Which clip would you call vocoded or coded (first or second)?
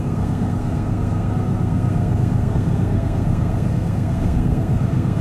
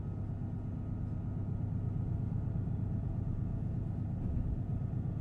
first